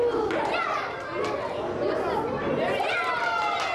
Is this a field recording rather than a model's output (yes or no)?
yes